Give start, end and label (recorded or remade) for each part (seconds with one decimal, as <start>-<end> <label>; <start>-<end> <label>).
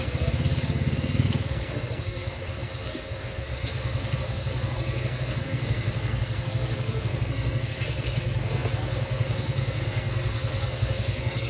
0.0-11.5 remade